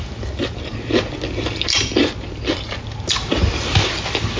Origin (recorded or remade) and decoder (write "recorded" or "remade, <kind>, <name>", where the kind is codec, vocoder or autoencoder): recorded